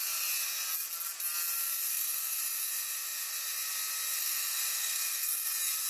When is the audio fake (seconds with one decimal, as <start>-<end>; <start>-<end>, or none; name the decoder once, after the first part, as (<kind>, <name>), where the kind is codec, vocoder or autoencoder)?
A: 1.9-2.4 (codec, SNAC); 4.2-5.5